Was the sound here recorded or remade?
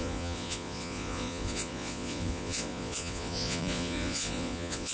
remade